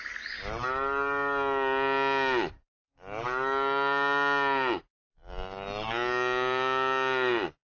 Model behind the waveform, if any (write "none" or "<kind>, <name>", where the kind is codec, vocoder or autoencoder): none